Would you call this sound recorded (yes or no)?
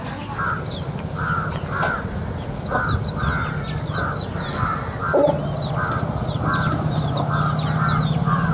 yes